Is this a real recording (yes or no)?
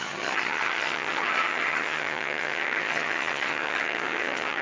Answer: no